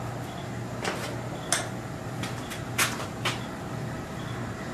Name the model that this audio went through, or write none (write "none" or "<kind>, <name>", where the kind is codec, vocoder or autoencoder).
none